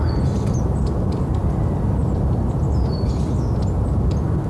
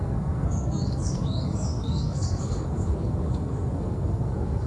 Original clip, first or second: first